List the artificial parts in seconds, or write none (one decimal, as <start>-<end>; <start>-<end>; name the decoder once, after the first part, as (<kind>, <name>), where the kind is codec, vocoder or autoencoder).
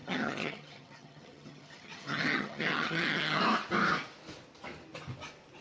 0.0-3.4 (vocoder, HiFi-GAN)